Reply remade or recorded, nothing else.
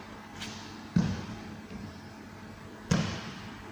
recorded